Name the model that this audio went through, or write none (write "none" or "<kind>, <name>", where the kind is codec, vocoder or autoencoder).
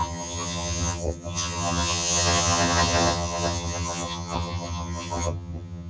vocoder, HiFi-GAN